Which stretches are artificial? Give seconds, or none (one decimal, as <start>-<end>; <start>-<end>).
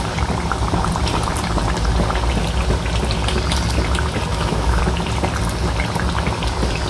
4.3-4.8